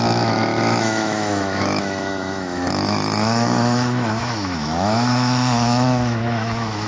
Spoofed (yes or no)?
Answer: yes